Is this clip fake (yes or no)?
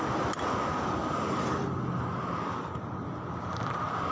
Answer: no